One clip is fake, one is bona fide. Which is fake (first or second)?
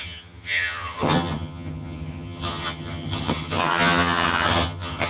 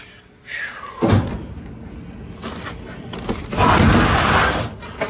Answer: first